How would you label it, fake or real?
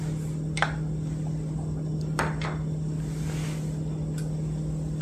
real